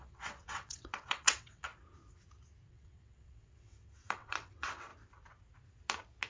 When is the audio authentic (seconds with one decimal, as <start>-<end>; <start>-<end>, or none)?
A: 1.7-2.7; 4.9-6.3